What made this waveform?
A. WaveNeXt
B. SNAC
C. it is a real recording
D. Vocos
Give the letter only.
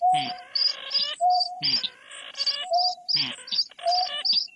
C